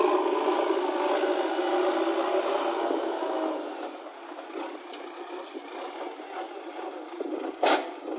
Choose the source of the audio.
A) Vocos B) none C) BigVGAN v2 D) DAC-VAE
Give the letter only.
B